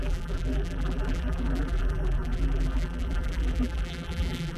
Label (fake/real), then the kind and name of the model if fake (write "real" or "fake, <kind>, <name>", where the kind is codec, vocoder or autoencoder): fake, vocoder, BigVGAN v2